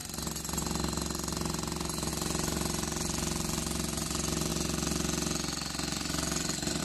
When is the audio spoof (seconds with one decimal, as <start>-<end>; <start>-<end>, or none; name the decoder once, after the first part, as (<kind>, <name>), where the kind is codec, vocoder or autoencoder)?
none